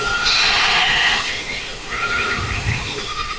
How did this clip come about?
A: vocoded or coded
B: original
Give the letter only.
A